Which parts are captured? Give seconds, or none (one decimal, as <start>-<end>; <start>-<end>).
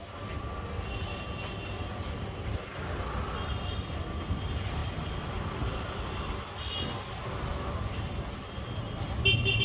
0.0-9.6